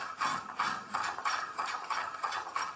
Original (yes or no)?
no